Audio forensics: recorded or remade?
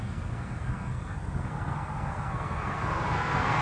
remade